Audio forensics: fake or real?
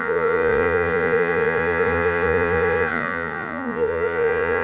fake